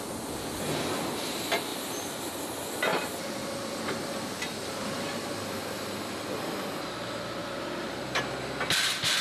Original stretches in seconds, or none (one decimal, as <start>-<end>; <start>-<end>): 0.0-1.7; 2.3-2.9; 6.2-7.4; 8.0-9.2